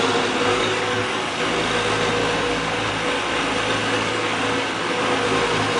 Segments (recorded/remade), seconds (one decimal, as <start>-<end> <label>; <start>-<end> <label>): 0.0-0.5 recorded; 0.5-1.4 remade; 1.4-2.2 recorded; 2.2-2.9 remade; 2.9-3.8 recorded; 3.8-5.0 remade; 5.0-5.8 recorded